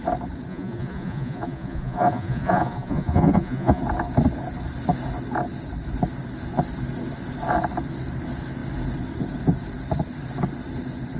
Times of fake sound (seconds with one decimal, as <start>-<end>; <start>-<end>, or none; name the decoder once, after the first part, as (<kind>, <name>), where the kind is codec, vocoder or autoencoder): 0.5-3.8 (vocoder, Vocos)